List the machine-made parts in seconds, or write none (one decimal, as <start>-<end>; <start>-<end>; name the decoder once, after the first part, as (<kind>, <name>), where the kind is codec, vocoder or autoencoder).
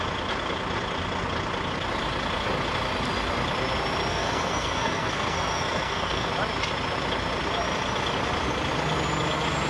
4.1-6.3 (codec, SNAC)